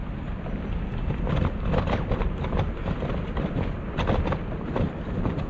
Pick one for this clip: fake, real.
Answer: real